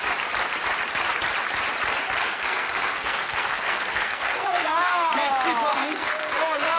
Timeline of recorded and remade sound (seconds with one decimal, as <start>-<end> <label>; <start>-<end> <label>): 0.0-2.3 recorded; 2.3-5.3 remade; 5.3-5.7 recorded; 5.7-6.8 remade